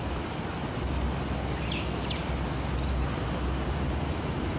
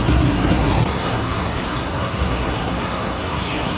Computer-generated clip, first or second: second